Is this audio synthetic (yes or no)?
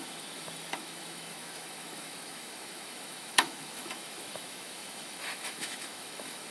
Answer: yes